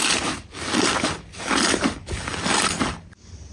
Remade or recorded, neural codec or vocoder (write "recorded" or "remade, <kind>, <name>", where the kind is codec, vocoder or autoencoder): recorded